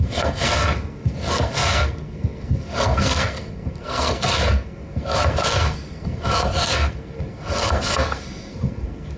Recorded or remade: remade